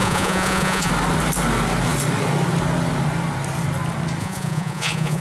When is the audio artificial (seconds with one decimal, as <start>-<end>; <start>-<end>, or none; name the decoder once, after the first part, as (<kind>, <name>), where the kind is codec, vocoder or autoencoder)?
0.0-0.9 (vocoder, Vocos); 4.2-5.2